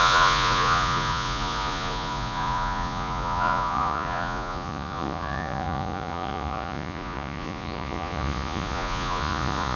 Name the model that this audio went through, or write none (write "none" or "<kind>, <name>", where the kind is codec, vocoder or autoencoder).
vocoder, Vocos